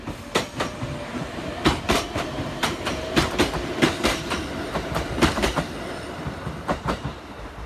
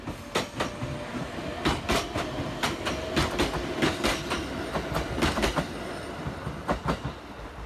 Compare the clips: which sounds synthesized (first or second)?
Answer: first